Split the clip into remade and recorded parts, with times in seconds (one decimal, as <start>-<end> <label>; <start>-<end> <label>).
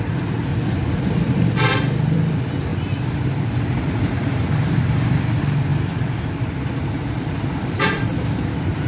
0.0-0.5 remade; 0.5-1.1 recorded; 1.1-5.7 remade; 5.7-6.3 recorded; 6.3-8.9 remade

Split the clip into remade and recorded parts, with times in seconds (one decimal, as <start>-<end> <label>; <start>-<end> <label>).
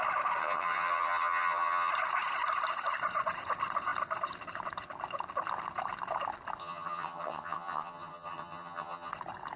0.0-0.4 recorded; 0.4-1.9 remade; 1.9-6.6 recorded; 6.6-9.1 remade; 9.1-9.6 recorded